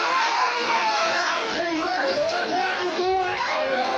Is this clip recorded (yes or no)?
no